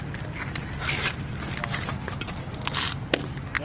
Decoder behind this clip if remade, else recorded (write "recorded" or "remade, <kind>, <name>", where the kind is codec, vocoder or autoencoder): recorded